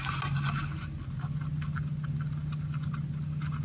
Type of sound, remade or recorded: recorded